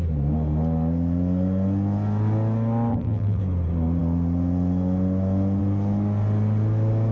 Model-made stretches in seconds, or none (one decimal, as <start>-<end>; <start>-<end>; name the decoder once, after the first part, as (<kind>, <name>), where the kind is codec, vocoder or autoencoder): 2.9-3.4 (vocoder, BigVGAN v2)